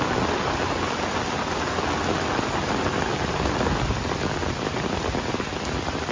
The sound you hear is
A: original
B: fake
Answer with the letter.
A